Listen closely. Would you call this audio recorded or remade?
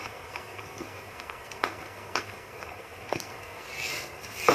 remade